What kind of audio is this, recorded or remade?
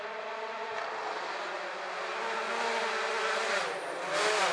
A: recorded